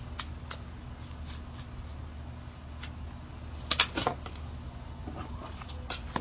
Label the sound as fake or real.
real